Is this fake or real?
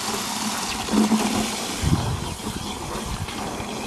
real